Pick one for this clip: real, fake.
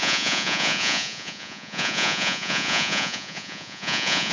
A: fake